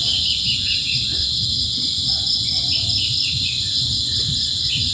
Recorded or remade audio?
remade